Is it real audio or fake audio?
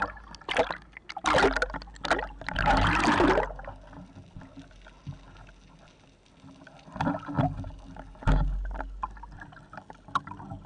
real